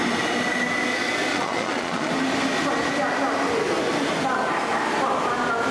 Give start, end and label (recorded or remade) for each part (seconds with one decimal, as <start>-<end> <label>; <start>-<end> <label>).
0.0-1.3 recorded; 1.3-2.1 remade; 2.1-5.7 recorded